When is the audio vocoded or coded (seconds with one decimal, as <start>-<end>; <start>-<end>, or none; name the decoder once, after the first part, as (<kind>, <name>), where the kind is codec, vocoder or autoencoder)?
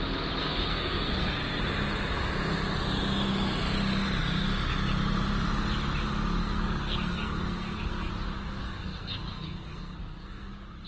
0.4-1.6 (codec, SNAC); 6.4-8.1; 8.6-10.5